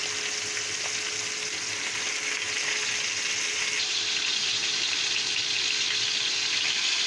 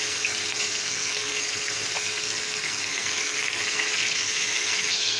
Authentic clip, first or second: first